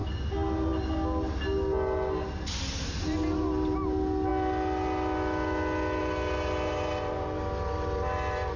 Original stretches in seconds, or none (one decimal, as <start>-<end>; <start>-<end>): 0.0-8.6